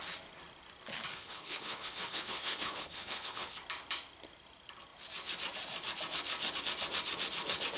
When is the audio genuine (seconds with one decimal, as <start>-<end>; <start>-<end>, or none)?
0.0-1.1; 3.6-7.8